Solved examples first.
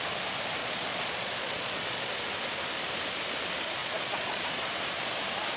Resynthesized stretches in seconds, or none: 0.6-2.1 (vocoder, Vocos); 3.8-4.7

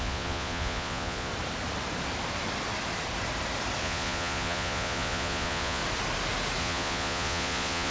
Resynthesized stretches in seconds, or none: 0.0-1.3 (vocoder, Vocos); 3.8-5.8; 6.6-7.9

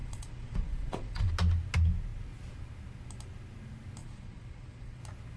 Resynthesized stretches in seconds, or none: 0.0-1.3 (vocoder, Vocos); 4.0-5.0

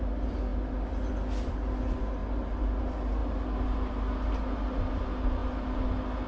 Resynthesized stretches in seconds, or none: none

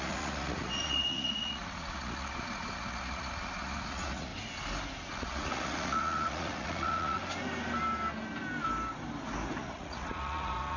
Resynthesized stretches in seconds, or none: 0.0-4.3 (vocoder, Vocos); 5.1-7.2; 9.6-10.8